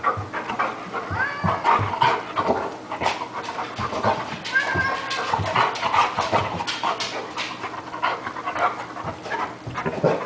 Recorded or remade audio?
recorded